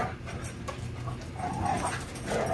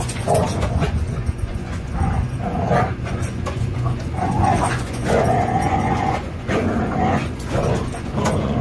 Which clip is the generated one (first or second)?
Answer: second